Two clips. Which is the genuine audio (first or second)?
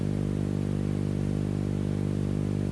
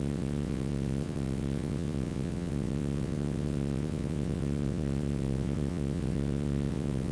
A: first